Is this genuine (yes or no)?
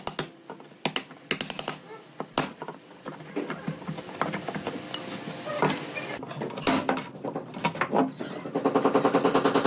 yes